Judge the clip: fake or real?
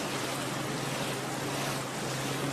real